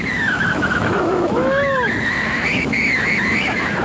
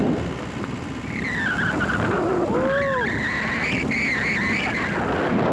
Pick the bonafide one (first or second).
second